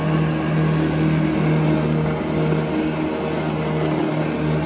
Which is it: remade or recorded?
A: recorded